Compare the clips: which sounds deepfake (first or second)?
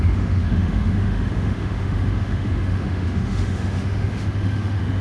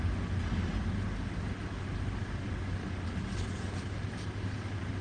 first